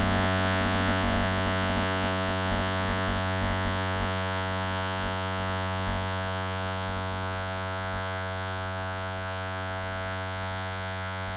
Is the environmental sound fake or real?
fake